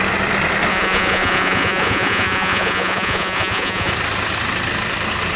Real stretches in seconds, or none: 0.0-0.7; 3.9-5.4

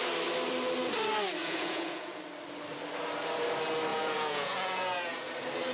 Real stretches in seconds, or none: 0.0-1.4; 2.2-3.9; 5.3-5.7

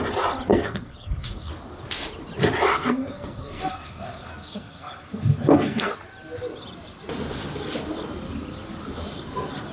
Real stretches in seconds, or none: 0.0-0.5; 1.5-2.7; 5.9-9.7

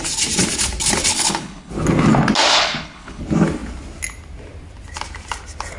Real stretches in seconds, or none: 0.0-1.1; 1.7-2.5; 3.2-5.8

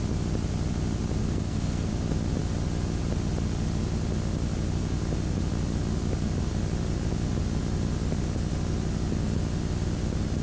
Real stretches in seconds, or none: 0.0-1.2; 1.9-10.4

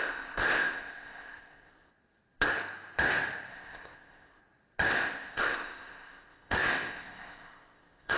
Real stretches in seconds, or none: 1.9-3.5; 4.4-4.9

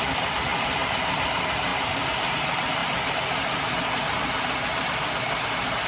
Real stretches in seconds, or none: 0.0-5.9